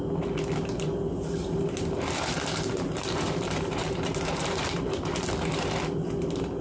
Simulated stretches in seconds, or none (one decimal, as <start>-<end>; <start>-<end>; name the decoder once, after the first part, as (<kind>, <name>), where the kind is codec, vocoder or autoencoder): 1.4-5.1 (vocoder, BigVGAN v2)